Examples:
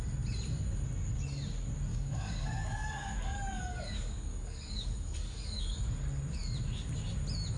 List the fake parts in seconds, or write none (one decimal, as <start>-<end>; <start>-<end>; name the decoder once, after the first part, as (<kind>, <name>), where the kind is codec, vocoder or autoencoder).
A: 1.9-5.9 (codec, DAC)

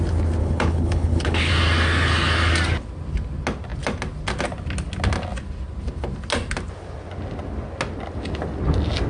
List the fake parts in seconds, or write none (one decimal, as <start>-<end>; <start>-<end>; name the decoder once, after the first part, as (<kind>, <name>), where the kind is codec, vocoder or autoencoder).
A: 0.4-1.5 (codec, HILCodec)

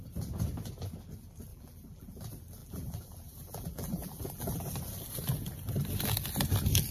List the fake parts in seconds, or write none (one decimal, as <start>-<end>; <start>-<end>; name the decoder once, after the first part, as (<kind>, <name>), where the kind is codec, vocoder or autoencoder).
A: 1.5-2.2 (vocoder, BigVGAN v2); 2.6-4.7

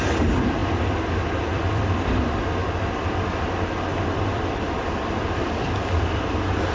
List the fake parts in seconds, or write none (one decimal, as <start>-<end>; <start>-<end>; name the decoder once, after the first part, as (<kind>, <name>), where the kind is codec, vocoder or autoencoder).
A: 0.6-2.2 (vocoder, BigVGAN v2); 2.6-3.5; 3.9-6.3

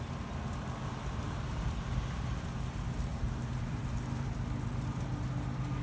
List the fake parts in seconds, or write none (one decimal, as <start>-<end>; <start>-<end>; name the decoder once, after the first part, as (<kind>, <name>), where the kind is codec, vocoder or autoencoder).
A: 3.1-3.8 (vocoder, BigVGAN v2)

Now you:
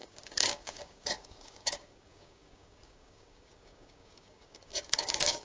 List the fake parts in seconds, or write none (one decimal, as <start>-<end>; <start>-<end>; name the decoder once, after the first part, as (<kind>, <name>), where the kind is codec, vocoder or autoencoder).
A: 0.0-5.4 (codec, DAC)

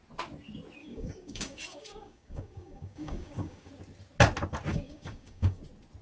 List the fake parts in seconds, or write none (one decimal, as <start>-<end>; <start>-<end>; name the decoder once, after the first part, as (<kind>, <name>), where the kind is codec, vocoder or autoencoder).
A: 0.8-3.7 (codec, DAC); 4.7-5.6